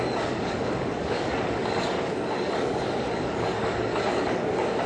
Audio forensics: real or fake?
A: fake